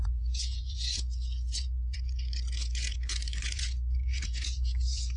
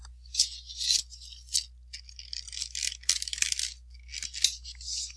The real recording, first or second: second